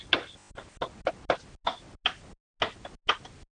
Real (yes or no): yes